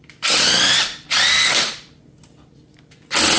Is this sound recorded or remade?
recorded